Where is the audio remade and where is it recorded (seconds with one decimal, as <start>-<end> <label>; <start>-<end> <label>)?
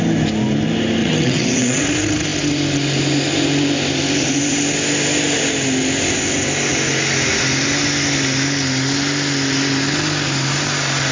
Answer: 0.0-1.0 recorded; 1.0-1.8 remade; 1.8-11.1 recorded